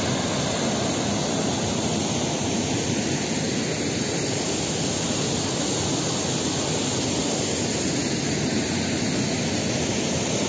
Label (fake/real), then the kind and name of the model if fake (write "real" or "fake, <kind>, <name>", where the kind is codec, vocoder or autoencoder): real